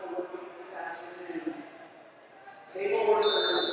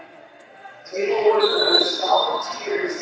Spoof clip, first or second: second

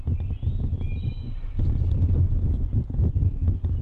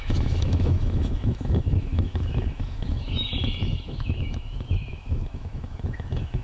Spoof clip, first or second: second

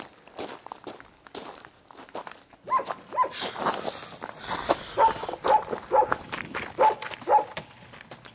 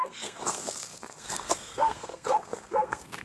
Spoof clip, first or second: second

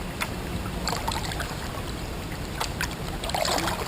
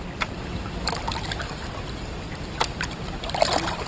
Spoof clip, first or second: second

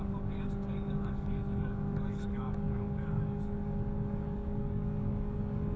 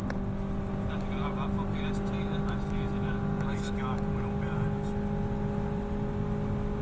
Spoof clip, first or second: first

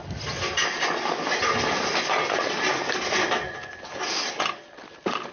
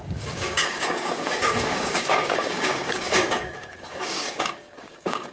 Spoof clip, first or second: second